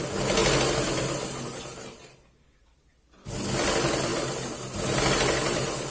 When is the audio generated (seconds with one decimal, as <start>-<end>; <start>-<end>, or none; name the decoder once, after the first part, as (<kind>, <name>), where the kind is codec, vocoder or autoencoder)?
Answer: 4.1-4.8 (vocoder, BigVGAN v2)